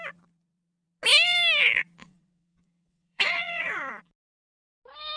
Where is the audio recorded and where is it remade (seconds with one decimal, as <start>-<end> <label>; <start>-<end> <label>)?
0.0-2.0 recorded; 2.0-4.0 remade; 4.0-5.2 recorded